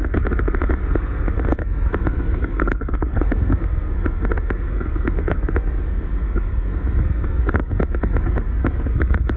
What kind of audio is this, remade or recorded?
remade